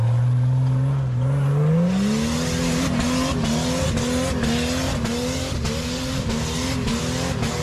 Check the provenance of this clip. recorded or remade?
recorded